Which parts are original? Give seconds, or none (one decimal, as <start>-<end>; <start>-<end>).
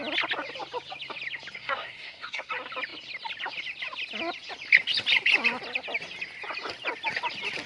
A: 0.0-1.6; 2.5-7.7